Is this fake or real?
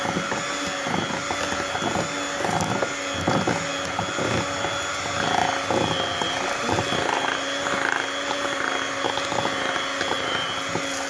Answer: real